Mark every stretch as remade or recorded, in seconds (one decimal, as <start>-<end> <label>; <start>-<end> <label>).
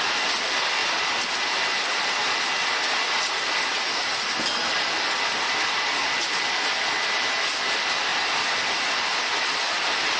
0.0-10.2 recorded